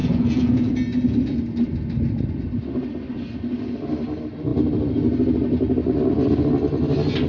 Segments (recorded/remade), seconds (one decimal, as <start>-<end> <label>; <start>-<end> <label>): 0.0-0.7 remade; 0.7-7.3 recorded